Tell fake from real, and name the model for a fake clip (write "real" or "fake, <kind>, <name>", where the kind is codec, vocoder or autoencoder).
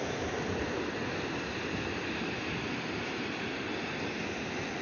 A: real